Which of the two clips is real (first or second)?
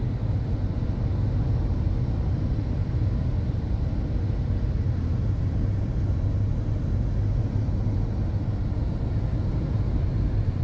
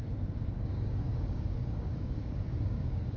first